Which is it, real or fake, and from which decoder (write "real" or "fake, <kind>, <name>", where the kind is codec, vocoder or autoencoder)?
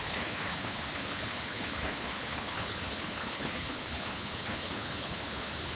fake, codec, HILCodec